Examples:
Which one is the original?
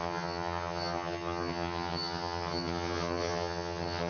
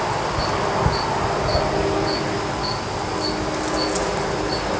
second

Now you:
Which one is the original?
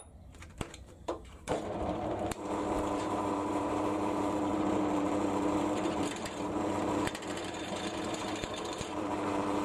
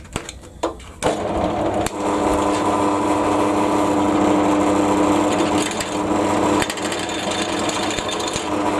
second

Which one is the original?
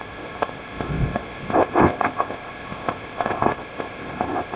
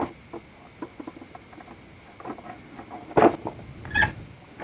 second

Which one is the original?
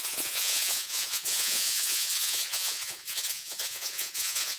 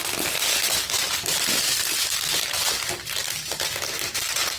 second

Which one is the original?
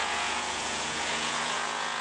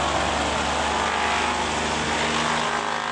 second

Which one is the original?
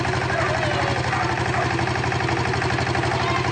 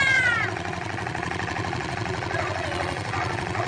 first